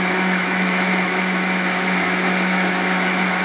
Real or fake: fake